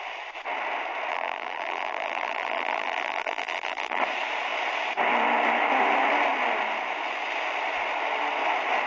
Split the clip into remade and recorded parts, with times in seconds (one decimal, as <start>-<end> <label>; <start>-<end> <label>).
0.0-1.1 recorded; 1.1-4.0 remade; 4.0-8.9 recorded